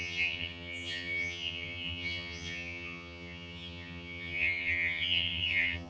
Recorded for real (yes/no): no